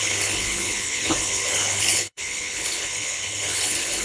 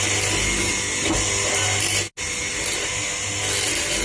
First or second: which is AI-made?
first